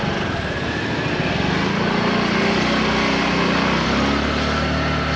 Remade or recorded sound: recorded